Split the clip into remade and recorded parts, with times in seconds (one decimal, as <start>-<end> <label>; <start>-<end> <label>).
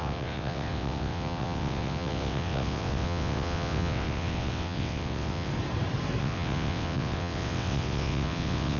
0.0-5.5 remade; 5.5-6.2 recorded; 6.2-8.8 remade